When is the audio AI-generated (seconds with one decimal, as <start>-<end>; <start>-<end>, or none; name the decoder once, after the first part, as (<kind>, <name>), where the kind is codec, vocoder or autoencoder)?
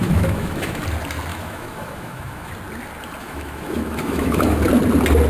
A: 0.0-0.8 (autoencoder, DAC-VAE); 1.3-2.5; 3.2-4.6